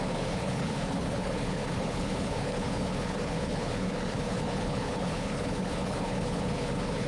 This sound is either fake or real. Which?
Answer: fake